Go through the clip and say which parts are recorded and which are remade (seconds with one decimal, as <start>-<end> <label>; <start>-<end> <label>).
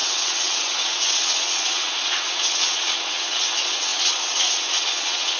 0.0-5.4 remade